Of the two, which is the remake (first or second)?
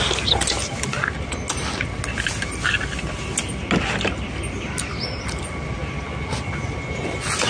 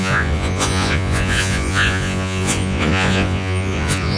second